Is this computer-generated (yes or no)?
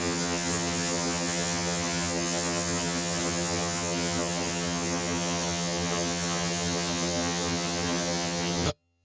yes